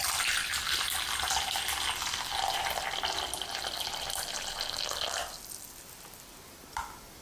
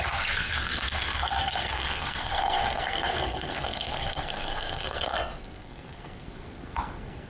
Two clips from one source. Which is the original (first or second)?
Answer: first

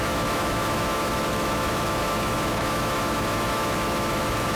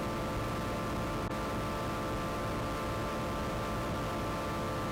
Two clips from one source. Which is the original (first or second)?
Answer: second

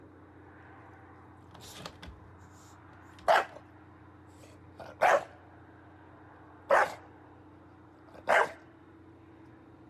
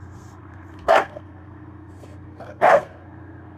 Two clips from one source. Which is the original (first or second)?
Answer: first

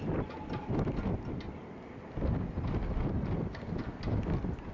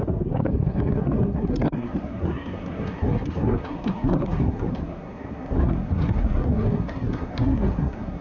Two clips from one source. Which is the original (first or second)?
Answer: first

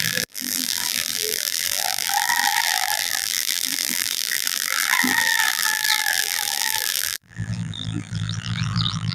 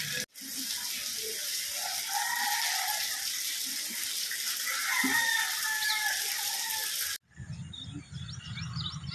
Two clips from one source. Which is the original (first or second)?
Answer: second